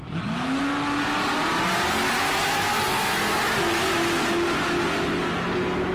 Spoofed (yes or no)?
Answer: no